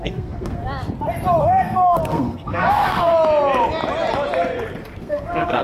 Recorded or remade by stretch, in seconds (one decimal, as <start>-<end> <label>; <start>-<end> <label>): 0.0-0.6 remade; 0.6-1.4 recorded; 1.4-3.1 remade; 3.1-5.0 recorded; 5.0-5.6 remade